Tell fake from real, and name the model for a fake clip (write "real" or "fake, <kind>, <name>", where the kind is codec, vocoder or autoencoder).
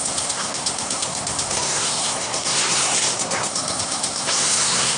fake, codec, SNAC